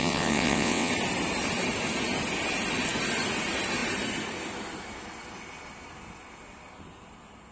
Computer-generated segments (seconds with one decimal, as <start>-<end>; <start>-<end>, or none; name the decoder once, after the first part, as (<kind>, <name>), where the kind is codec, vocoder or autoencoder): 0.0-0.9 (vocoder, WaveNeXt)